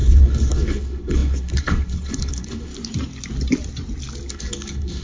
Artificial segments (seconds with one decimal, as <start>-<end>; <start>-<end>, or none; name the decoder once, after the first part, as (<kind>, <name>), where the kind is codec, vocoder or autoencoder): 0.0-2.7 (codec, HILCodec); 4.3-5.0